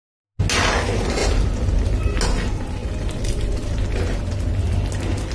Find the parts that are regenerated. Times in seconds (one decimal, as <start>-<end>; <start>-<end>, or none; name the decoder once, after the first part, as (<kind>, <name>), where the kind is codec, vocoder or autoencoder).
none